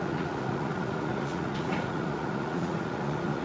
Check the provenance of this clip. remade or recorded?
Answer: remade